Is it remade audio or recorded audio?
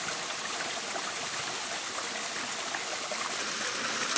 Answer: recorded